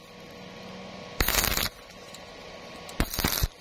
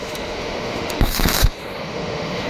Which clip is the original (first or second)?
first